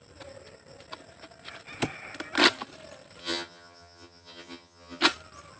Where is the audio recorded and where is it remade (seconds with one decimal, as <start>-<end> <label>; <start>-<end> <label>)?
0.0-3.2 recorded; 3.2-5.0 remade; 5.0-5.6 recorded